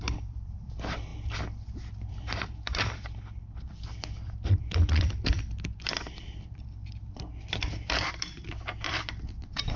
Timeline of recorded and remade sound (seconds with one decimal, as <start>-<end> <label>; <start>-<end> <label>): 0.0-1.1 remade; 1.1-2.1 recorded; 2.1-9.8 remade